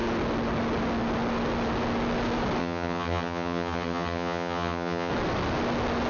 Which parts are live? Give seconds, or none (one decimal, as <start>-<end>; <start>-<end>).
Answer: 0.0-2.6; 5.1-6.1